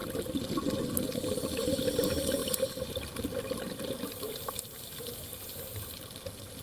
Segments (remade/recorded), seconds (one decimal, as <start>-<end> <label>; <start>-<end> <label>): 0.0-6.6 recorded